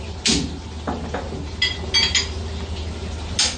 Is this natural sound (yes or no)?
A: yes